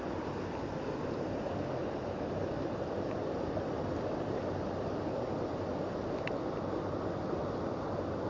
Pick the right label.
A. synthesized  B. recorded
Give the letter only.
B